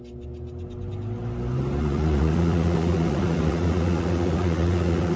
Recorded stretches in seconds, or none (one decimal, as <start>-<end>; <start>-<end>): 0.0-1.8